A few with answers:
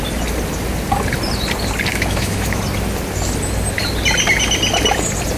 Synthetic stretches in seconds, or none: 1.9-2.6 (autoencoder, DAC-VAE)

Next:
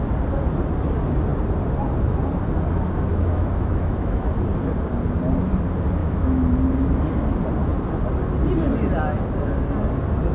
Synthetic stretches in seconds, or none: 3.1-4.3 (autoencoder, DAC-VAE); 6.0-6.5

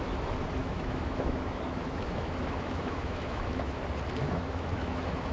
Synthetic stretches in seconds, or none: 0.6-3.8 (autoencoder, DAC-VAE); 4.2-5.3